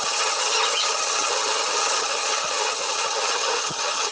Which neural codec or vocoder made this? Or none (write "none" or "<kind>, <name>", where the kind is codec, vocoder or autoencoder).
vocoder, HiFi-GAN